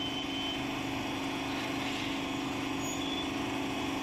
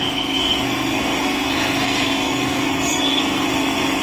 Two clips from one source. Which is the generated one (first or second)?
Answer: second